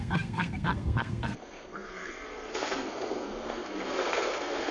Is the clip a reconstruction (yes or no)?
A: yes